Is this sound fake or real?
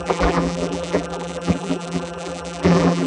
fake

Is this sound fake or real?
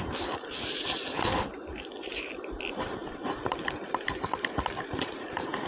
fake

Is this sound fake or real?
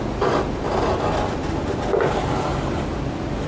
real